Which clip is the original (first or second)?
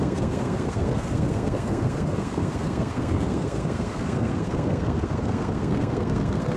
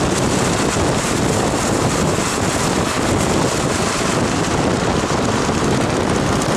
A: second